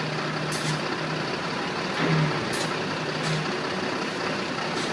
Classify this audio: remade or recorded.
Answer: recorded